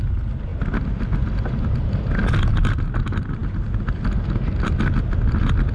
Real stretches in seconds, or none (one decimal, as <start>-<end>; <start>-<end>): 0.0-5.7